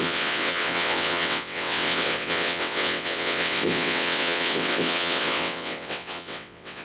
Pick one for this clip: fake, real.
fake